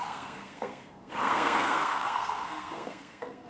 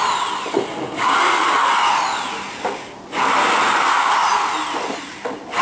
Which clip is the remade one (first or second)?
first